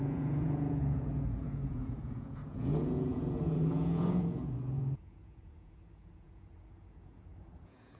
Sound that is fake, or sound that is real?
fake